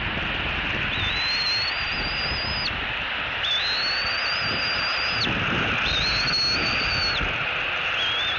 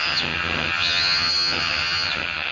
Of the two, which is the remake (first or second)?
second